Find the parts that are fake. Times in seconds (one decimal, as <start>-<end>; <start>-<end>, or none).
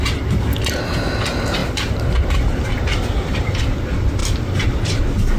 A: 1.6-3.6; 4.2-5.0